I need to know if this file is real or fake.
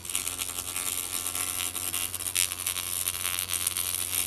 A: real